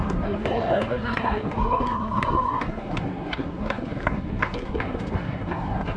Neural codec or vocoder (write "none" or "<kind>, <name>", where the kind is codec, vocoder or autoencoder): codec, SNAC